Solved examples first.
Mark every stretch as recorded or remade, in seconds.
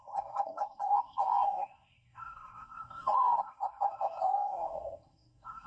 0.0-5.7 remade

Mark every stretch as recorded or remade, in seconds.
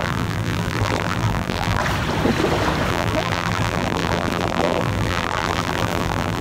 0.0-1.8 remade; 1.8-2.9 recorded; 2.9-6.4 remade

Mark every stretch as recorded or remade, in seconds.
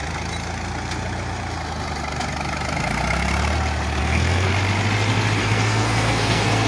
0.0-4.0 recorded; 4.0-4.5 remade; 4.5-5.4 recorded; 5.4-6.7 remade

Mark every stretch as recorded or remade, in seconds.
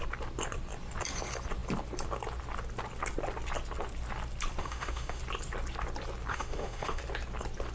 0.0-4.6 recorded; 4.6-5.2 remade; 5.2-6.3 recorded; 6.3-7.0 remade; 7.0-7.7 recorded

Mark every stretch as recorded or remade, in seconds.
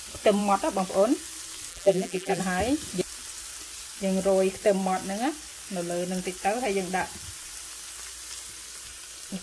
0.0-1.7 recorded; 1.7-2.4 remade; 2.4-9.4 recorded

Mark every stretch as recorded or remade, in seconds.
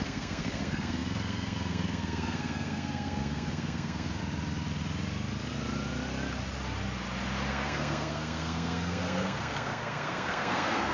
0.0-4.2 remade; 4.2-7.5 recorded; 7.5-10.9 remade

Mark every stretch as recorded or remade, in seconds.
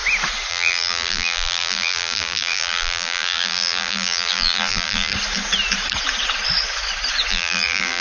0.0-0.5 recorded; 0.5-5.1 remade; 5.1-7.3 recorded; 7.3-8.0 remade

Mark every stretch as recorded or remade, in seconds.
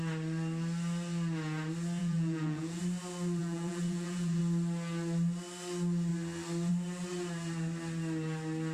0.0-2.0 recorded; 2.0-2.8 remade; 2.8-3.4 recorded; 3.4-4.4 remade; 4.4-8.7 recorded